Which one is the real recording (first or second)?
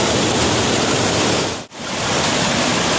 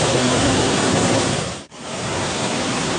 first